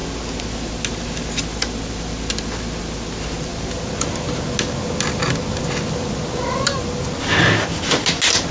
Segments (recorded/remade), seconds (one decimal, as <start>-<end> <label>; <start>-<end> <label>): 0.0-8.5 recorded